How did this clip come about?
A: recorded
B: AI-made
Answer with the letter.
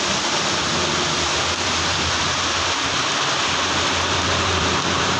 B